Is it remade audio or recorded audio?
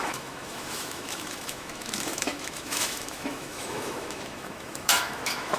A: remade